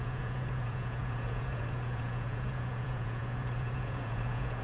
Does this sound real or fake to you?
fake